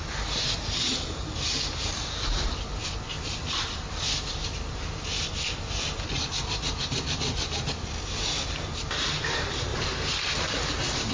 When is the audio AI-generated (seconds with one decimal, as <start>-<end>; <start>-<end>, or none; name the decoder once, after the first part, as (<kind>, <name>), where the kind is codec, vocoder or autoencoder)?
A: none

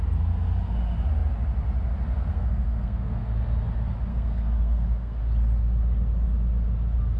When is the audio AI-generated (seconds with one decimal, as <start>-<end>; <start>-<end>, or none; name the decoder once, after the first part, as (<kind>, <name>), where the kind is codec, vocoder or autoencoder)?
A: 2.3-3.2 (codec, SNAC); 4.1-5.2

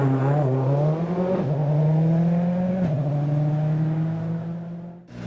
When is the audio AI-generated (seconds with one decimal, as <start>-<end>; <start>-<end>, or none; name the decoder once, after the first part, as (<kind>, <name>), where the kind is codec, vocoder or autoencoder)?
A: none

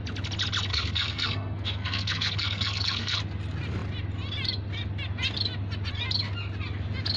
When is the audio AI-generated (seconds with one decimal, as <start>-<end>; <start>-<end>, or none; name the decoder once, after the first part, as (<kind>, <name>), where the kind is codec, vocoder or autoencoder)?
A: 0.7-3.2 (codec, SNAC)

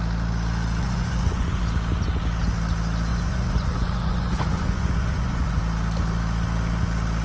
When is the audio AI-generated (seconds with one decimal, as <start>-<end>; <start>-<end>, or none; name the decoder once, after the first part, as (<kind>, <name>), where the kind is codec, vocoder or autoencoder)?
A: 0.8-1.6 (vocoder, Vocos); 3.1-5.6

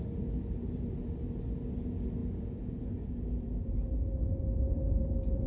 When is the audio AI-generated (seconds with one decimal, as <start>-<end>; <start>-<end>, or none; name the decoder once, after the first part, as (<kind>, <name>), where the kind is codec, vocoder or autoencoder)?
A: 2.2-4.4 (vocoder, Vocos)

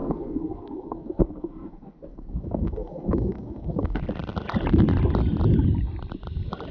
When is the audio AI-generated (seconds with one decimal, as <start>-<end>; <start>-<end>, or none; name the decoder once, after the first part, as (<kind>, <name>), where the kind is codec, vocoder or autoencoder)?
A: 0.0-4.0 (codec, SNAC)

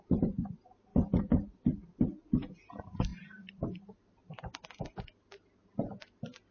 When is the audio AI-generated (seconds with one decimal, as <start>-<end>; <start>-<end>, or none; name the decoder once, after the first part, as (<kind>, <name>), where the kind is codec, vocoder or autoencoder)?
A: 3.1-4.8 (vocoder, BigVGAN v2)